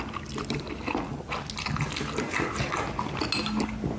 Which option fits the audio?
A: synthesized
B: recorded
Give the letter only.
B